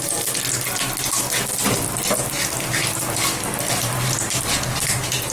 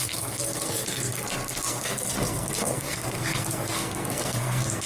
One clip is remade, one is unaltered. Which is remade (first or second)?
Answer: second